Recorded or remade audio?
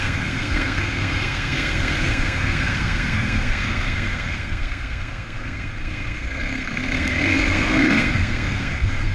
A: remade